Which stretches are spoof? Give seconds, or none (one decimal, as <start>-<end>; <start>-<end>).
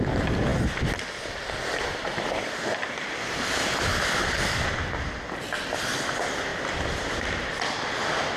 6.5-8.4